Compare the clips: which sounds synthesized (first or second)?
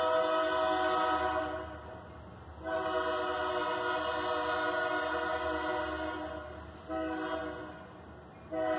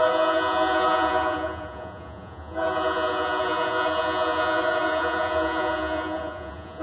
second